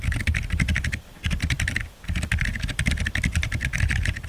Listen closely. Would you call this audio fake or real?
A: real